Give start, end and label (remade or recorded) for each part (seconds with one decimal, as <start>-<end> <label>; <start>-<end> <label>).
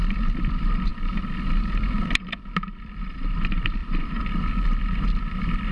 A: 0.0-0.9 remade; 0.9-1.5 recorded; 1.5-5.7 remade